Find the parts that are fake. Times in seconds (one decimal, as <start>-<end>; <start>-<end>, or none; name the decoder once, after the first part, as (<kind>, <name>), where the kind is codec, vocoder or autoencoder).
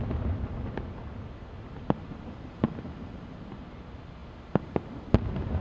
none